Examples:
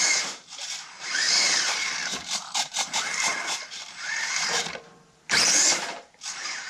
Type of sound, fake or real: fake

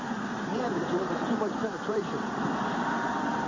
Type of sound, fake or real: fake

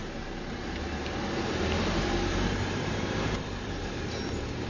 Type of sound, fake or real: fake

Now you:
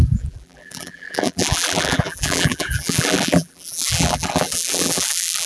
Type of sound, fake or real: fake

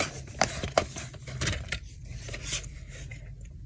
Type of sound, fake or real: fake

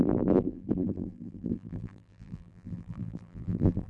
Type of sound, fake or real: fake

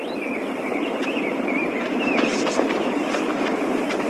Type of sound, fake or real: fake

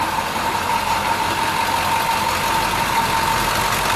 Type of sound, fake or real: real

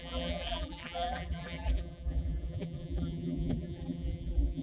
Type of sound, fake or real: fake